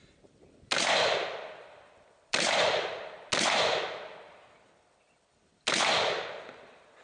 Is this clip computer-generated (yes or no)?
no